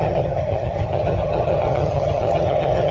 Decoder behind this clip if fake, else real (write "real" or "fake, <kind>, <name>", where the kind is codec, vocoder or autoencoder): fake, vocoder, HiFi-GAN